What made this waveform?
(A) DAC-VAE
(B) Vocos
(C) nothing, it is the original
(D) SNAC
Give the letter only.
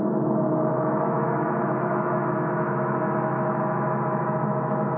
A